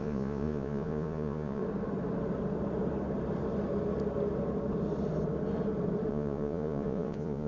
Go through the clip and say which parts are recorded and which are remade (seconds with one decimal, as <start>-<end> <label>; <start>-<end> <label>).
0.0-1.6 remade; 1.6-6.1 recorded; 6.1-7.5 remade